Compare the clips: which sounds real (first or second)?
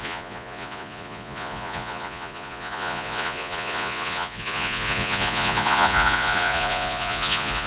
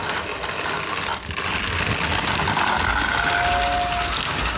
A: second